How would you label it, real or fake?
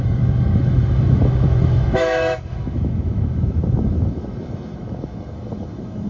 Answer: fake